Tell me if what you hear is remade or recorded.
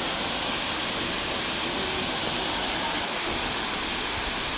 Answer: recorded